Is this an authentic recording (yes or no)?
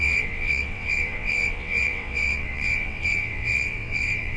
no